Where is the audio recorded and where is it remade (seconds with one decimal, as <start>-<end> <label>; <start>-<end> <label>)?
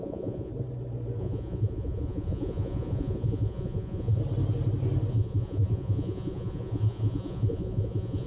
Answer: 0.0-0.5 remade; 0.5-1.2 recorded; 1.2-4.2 remade; 4.2-5.1 recorded; 5.1-8.3 remade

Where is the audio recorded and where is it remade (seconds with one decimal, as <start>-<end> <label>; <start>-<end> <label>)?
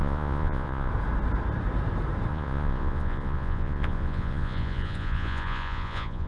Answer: 0.0-0.9 remade; 0.9-2.3 recorded; 2.3-6.3 remade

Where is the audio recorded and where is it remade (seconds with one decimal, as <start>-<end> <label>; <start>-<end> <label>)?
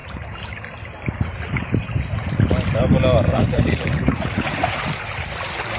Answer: 0.0-3.3 recorded; 3.3-4.8 remade; 4.8-5.8 recorded